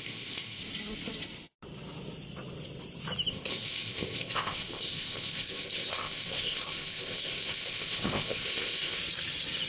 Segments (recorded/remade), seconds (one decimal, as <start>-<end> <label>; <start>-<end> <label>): 0.0-0.6 remade; 0.6-3.3 recorded; 3.3-9.0 remade; 9.0-9.7 recorded